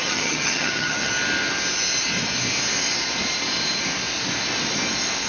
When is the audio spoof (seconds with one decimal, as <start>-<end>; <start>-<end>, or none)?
0.0-1.1

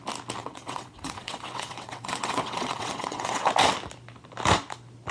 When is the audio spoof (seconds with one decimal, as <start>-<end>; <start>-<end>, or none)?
0.4-3.5

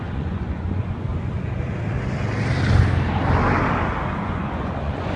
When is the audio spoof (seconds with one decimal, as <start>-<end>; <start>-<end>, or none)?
0.0-1.1; 4.2-5.2

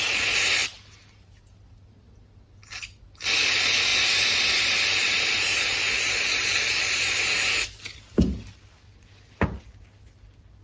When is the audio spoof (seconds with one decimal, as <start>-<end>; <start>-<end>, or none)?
none